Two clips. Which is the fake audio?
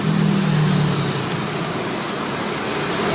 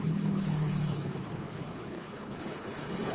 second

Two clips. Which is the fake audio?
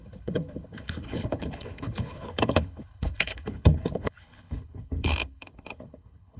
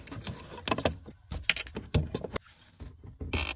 first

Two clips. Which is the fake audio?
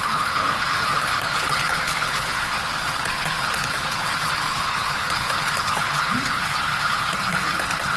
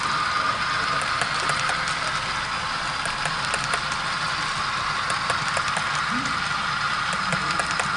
first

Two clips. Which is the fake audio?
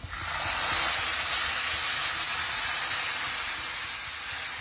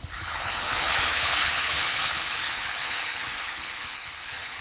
second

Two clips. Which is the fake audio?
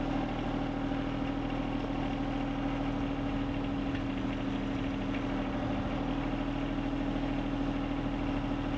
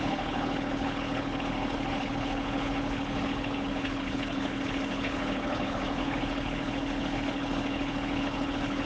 second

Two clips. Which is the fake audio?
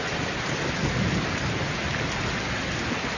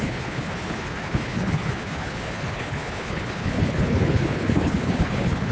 second